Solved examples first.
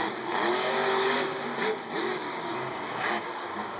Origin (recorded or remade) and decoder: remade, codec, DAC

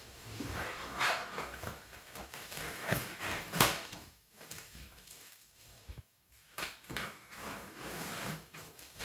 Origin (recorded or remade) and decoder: remade, codec, DAC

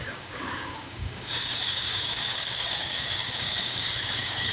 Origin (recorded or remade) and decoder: remade, codec, DAC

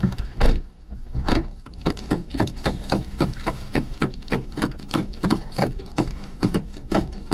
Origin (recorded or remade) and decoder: remade, codec, DAC